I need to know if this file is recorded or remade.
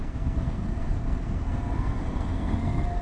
remade